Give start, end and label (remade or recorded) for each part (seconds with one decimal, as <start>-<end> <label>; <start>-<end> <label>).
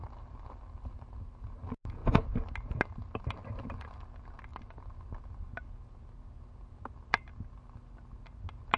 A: 0.0-8.8 recorded